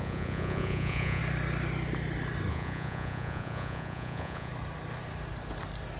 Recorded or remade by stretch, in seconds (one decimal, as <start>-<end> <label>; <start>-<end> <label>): 0.0-1.2 remade; 1.2-2.5 recorded; 2.5-4.5 remade; 4.5-6.0 recorded